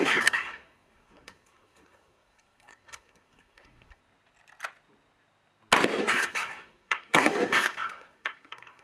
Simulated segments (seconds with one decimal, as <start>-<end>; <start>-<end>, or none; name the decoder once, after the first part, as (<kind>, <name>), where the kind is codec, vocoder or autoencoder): 0.0-4.0 (codec, SNAC); 6.0-8.8